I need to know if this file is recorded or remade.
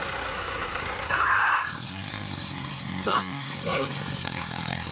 remade